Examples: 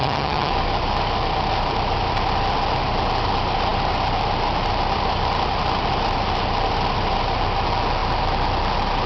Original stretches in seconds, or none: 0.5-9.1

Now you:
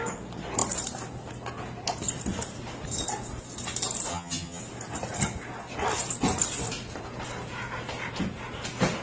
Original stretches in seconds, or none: 0.0-4.1; 4.6-9.0

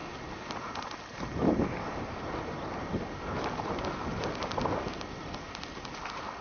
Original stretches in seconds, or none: 0.0-6.4

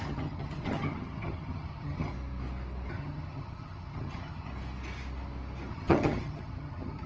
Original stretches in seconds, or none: 2.1-2.9; 4.5-5.7